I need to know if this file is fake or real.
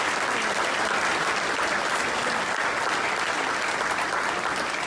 real